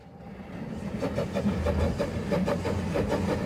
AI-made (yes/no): no